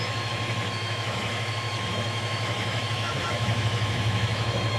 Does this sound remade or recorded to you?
remade